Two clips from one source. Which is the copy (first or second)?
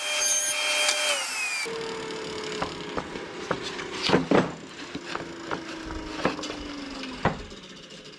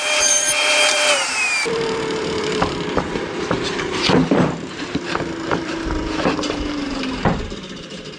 second